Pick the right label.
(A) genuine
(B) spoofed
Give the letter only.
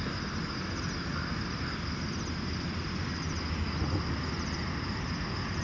A